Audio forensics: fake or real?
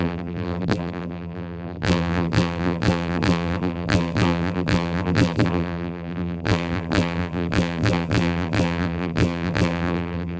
fake